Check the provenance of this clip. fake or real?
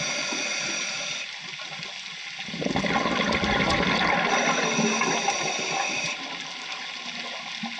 real